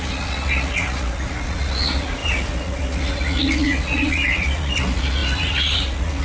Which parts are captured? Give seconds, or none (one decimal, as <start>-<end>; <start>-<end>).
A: none

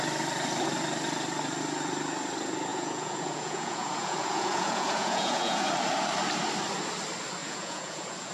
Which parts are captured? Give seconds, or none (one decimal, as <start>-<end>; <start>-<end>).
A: 0.0-2.7; 5.7-7.4

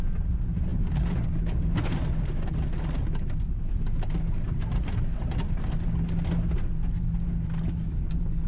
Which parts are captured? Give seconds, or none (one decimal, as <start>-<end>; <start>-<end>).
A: 0.0-8.5

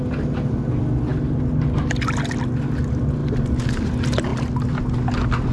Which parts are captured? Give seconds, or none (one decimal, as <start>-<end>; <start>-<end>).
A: 0.0-5.5

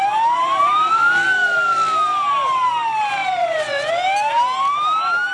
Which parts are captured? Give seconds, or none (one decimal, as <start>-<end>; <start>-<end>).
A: 0.0-3.2; 3.9-5.3

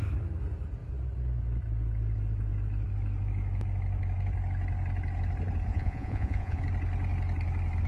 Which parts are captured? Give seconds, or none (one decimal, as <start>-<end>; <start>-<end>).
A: 0.0-5.7; 6.6-7.9

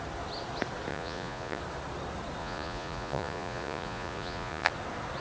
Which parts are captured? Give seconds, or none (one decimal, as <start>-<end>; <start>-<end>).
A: 0.0-0.9; 1.6-2.4; 4.7-5.2

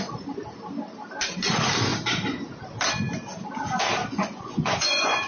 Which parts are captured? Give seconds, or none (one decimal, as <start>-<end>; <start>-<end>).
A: 0.0-4.0